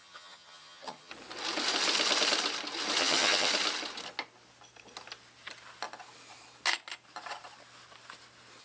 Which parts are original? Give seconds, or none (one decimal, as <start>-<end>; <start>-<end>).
1.1-3.0; 3.5-8.6